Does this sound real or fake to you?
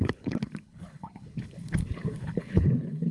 fake